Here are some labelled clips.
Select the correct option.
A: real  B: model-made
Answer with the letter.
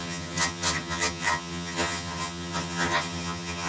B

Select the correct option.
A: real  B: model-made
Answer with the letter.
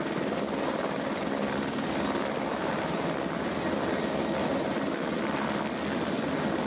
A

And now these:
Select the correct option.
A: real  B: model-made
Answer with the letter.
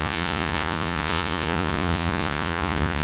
B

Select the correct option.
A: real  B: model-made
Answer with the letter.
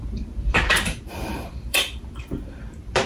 B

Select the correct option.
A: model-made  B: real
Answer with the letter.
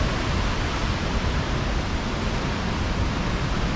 B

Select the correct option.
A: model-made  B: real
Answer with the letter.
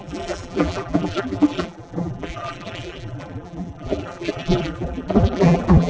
A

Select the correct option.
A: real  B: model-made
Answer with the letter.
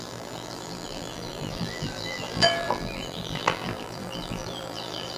B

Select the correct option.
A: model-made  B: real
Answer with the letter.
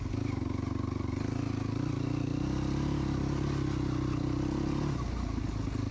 B